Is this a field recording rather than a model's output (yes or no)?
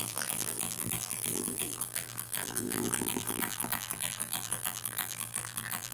no